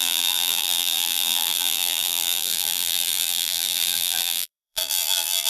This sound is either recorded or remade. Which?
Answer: remade